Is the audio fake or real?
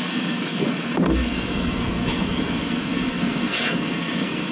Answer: fake